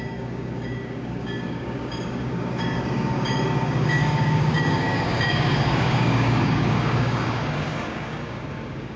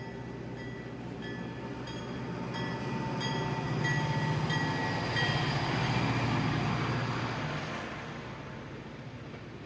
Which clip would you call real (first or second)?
second